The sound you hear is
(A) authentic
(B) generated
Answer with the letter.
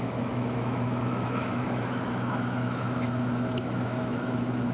B